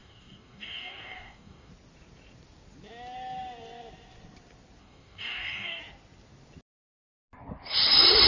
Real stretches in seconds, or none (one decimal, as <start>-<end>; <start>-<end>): 1.7-4.8; 5.8-8.3